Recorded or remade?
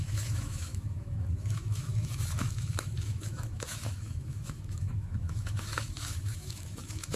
remade